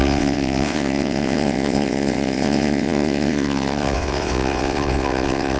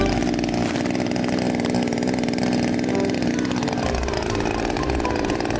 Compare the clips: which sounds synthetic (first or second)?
first